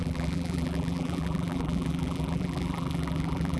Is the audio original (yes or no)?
no